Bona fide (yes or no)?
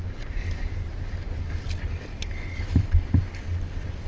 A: yes